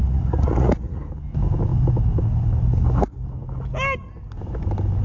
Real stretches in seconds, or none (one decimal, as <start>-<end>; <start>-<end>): 1.0-5.0